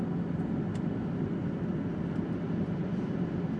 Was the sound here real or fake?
real